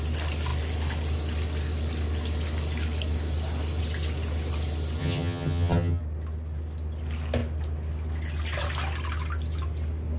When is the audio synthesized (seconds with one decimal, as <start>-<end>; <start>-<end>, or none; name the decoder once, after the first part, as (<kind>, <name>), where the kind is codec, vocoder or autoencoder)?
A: 5.0-6.0 (vocoder, HiFi-GAN)